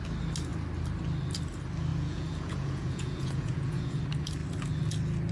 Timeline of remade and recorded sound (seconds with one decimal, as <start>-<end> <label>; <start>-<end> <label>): 0.0-1.9 recorded; 1.9-4.0 remade; 4.0-5.3 recorded